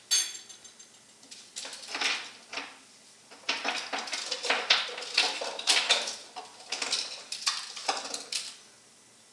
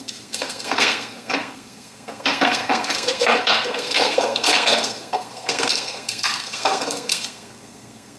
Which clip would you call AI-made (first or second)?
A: second